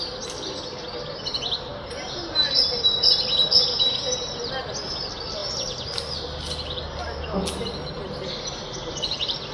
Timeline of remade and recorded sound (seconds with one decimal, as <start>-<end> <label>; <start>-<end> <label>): 0.0-1.7 recorded; 1.7-4.5 remade; 4.5-9.5 recorded